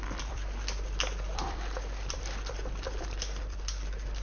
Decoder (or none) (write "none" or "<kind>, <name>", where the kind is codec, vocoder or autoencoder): vocoder, BigVGAN v2